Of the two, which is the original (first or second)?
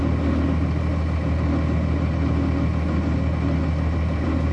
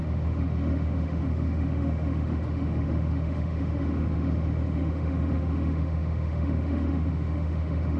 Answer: first